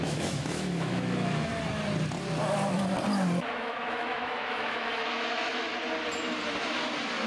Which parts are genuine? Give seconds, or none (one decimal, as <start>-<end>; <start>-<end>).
1.5-3.4; 5.7-7.3